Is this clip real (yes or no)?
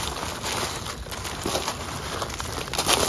yes